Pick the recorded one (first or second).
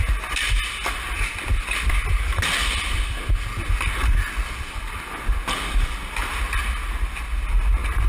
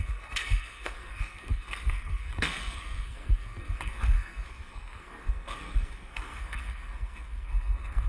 first